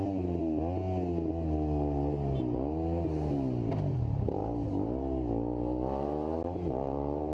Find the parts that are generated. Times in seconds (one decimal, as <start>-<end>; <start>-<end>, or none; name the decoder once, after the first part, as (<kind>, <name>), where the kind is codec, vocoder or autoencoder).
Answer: 0.0-0.4 (vocoder, BigVGAN v2); 3.7-4.4; 6.7-7.3